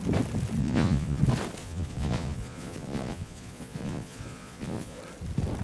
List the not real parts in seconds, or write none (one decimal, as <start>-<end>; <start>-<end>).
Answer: 0.6-1.2; 1.6-5.0